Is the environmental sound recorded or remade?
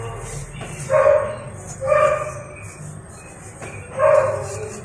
recorded